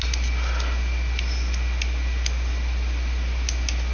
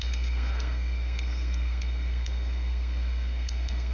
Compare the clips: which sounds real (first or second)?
first